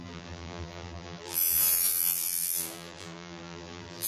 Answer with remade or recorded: remade